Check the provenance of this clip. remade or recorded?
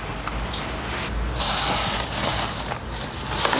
recorded